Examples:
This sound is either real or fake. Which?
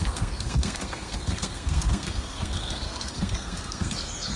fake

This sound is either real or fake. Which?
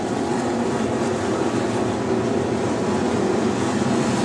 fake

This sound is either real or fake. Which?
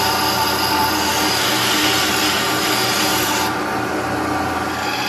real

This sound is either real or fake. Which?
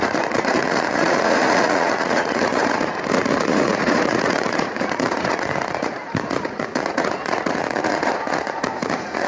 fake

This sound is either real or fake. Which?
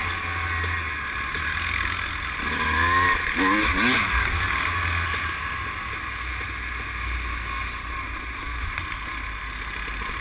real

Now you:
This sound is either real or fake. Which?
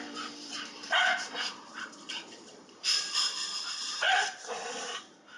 fake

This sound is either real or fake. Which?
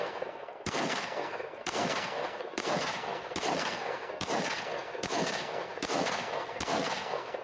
fake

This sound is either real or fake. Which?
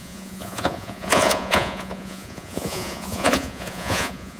fake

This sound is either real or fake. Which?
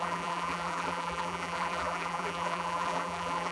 fake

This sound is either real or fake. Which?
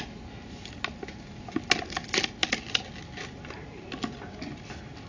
real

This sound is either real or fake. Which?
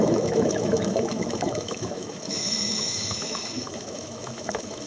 fake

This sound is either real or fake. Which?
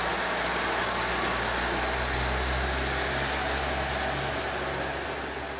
real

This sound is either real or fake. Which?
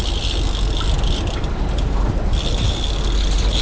real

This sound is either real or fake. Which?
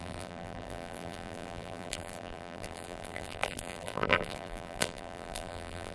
fake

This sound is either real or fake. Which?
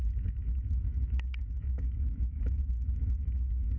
fake